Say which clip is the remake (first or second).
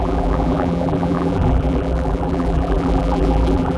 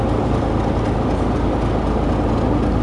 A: first